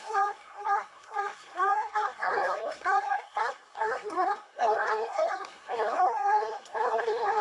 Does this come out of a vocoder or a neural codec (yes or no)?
yes